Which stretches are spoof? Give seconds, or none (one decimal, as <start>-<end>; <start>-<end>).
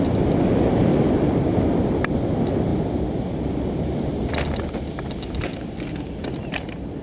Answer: none